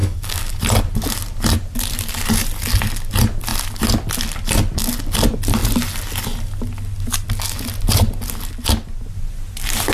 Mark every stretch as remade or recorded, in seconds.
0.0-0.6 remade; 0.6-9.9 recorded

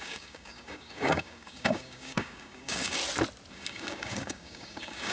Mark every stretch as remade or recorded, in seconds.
0.0-3.0 remade; 3.0-3.5 recorded; 3.5-5.1 remade

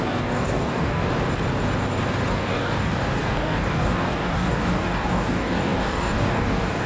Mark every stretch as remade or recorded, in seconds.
0.0-1.1 remade; 1.1-2.3 recorded; 2.3-6.9 remade

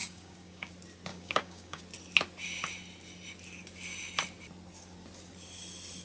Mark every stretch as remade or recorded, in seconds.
0.0-0.7 remade; 0.7-1.1 recorded; 1.1-1.8 remade; 1.8-6.0 recorded

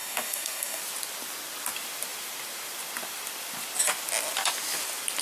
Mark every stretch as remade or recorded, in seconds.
0.0-0.8 remade; 0.8-5.2 recorded

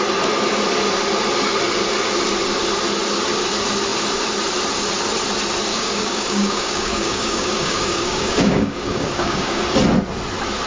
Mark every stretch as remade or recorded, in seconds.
0.0-5.7 recorded; 5.7-9.6 remade; 9.6-10.7 recorded

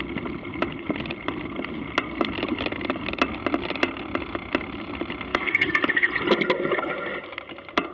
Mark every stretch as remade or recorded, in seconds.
0.0-5.3 recorded; 5.3-6.1 remade; 6.1-7.9 recorded

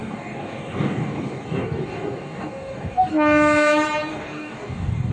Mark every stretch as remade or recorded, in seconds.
0.0-3.1 remade; 3.1-4.1 recorded; 4.1-5.1 remade